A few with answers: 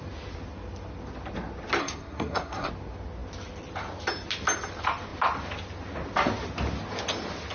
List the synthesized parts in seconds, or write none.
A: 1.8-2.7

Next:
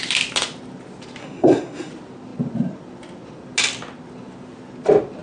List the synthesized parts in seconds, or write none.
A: 1.2-1.9

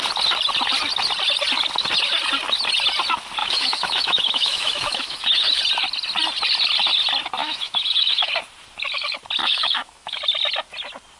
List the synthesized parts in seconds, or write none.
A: 3.4-5.6; 7.4-8.3; 9.4-10.2